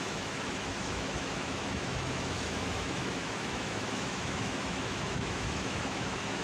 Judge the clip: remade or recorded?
remade